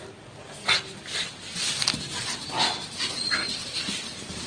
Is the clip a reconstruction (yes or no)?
no